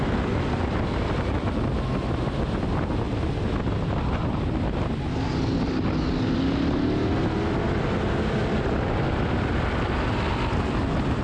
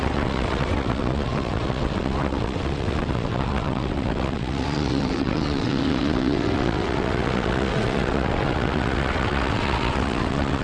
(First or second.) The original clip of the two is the first